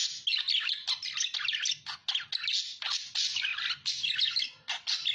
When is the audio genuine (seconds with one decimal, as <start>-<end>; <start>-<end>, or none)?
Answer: 0.0-5.1